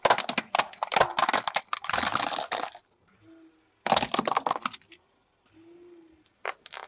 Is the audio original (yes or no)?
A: yes